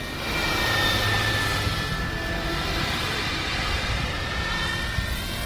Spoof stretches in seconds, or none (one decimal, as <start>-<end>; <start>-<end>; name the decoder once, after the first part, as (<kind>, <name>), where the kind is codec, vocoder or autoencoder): 0.4-1.4 (vocoder, BigVGAN v2); 1.9-4.5